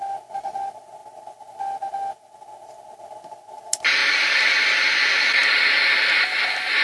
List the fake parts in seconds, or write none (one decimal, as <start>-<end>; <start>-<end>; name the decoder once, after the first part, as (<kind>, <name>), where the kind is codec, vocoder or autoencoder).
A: 4.0-4.8 (vocoder, BigVGAN v2)